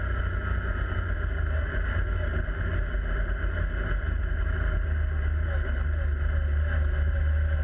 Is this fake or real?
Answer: real